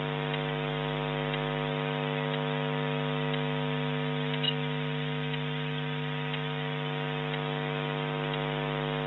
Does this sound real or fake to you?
real